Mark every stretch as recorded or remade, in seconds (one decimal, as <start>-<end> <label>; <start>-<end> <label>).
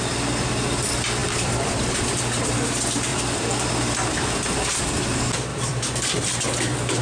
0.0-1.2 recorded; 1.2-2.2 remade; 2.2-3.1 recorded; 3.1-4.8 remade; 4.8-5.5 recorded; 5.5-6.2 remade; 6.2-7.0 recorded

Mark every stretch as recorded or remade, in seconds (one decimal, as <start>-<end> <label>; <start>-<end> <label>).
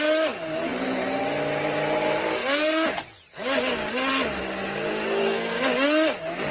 0.0-5.2 recorded; 5.2-5.7 remade; 5.7-6.5 recorded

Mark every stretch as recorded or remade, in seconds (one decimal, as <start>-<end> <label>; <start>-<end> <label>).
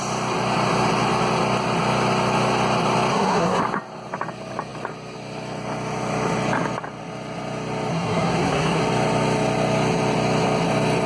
0.0-3.1 recorded; 3.1-3.6 remade; 3.6-7.9 recorded; 7.9-8.8 remade; 8.8-11.1 recorded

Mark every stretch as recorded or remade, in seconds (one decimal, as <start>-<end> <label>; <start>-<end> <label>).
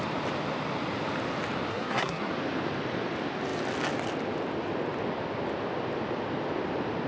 0.0-1.7 recorded; 1.7-2.3 remade; 2.3-7.1 recorded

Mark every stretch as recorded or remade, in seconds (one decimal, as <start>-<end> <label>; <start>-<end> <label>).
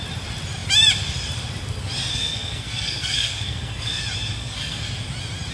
0.0-2.1 recorded; 2.1-4.0 remade; 4.0-4.4 recorded; 4.4-4.9 remade; 4.9-5.5 recorded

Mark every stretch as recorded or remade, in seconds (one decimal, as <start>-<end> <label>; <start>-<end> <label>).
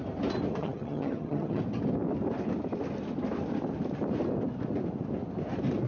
0.0-0.6 recorded; 0.6-1.6 remade; 1.6-5.9 recorded